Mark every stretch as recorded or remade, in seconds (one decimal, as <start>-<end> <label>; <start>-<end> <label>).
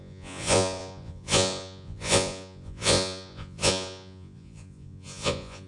0.0-5.7 remade